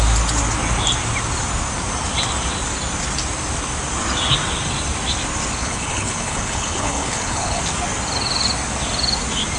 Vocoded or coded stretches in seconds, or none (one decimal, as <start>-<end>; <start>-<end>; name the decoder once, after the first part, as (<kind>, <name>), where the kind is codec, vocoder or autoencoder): 5.6-7.6 (codec, HILCodec)